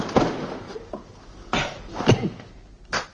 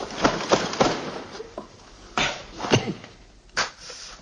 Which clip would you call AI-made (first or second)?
second